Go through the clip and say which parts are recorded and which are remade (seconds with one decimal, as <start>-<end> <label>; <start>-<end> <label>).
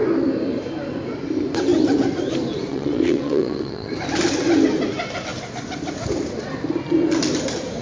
0.0-2.7 recorded; 2.7-3.9 remade; 3.9-7.8 recorded